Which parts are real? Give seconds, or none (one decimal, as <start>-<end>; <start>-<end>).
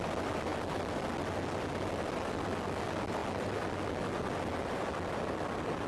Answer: 0.0-5.9